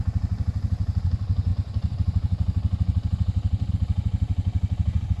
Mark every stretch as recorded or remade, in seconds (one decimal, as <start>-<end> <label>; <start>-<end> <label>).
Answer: 0.0-5.2 recorded